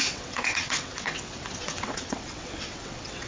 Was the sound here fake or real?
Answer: fake